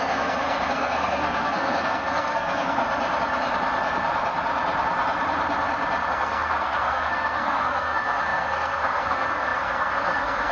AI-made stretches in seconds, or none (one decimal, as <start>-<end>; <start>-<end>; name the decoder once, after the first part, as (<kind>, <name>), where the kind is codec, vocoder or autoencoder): 0.0-2.8 (codec, SNAC); 6.1-10.5